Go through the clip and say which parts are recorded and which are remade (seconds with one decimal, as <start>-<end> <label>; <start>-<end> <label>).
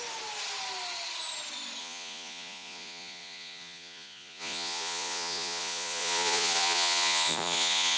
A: 0.0-1.8 recorded; 1.8-8.0 remade